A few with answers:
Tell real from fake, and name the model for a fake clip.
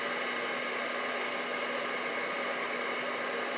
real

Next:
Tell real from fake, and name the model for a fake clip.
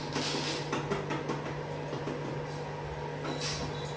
real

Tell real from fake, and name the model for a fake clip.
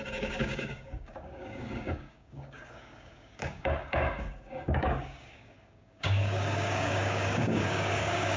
fake, codec, DAC